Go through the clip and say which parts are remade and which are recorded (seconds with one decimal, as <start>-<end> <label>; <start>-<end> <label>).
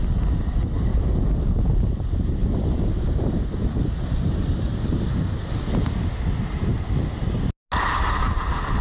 0.0-2.4 recorded; 2.4-5.1 remade; 5.1-8.8 recorded